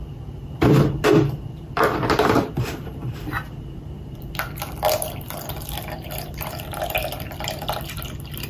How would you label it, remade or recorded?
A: remade